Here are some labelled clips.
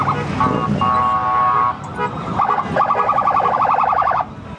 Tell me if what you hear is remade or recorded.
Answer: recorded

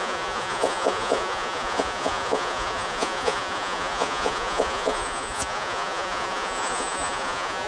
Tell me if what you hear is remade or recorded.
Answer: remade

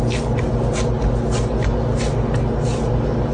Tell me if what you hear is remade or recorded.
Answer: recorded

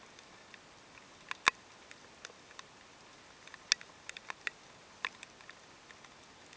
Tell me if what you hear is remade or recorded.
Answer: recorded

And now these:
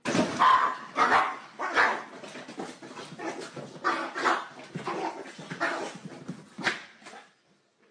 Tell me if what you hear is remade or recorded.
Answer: recorded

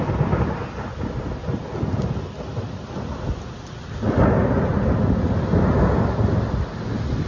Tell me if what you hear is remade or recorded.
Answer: recorded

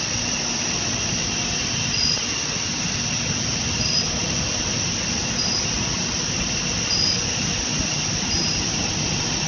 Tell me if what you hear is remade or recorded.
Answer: recorded